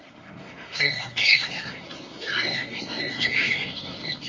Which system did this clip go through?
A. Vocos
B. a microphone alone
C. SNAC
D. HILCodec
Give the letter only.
C